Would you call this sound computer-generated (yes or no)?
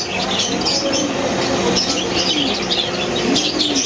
no